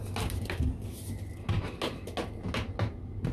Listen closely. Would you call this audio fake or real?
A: real